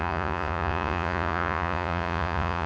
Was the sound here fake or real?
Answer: fake